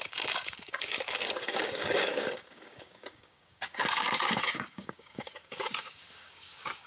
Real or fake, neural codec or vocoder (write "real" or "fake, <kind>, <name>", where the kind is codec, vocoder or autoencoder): fake, codec, DAC